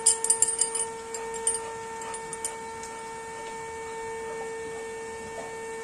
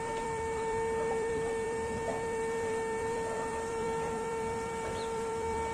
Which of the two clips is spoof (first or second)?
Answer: second